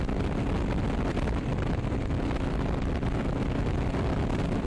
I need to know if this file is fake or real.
real